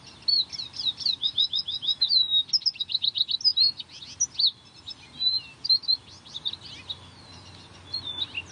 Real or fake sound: real